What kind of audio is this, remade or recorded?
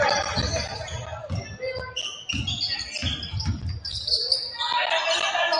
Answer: recorded